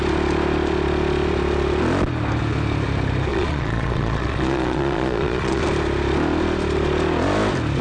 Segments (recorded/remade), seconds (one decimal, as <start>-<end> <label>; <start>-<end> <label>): 0.0-3.3 recorded; 3.3-5.6 remade; 5.6-7.8 recorded